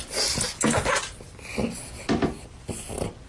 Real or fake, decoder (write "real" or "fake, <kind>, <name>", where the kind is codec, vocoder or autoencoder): real